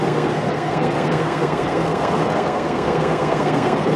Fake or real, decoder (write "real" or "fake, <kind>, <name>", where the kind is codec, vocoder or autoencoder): fake, codec, SNAC